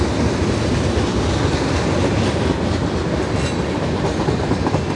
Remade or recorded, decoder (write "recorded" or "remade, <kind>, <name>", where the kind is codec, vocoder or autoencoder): recorded